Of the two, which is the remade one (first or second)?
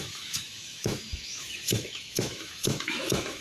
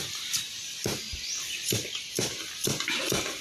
first